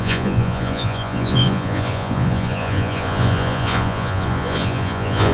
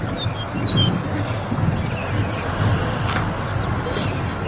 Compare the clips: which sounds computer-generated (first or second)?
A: first